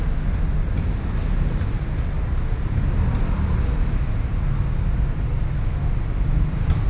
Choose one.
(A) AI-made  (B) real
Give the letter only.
B